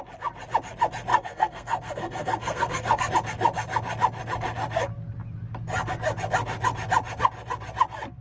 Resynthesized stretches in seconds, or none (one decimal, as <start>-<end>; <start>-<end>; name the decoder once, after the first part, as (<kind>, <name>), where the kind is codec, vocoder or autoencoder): 1.1-3.1 (codec, SNAC)